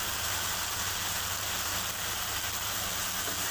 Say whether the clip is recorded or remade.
remade